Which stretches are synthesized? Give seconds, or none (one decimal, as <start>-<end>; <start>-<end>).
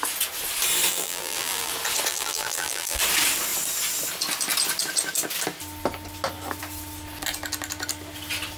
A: 0.9-1.7; 2.1-3.0